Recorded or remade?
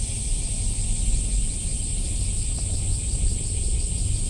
recorded